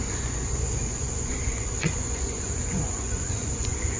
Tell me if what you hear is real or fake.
fake